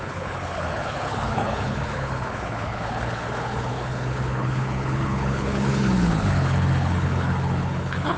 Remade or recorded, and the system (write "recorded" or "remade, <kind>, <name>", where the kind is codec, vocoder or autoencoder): remade, codec, HILCodec